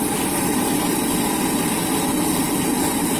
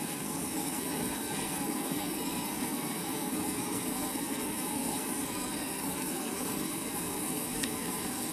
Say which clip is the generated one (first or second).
second